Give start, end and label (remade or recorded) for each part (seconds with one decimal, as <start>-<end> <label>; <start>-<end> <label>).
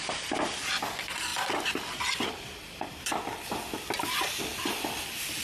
0.0-5.4 recorded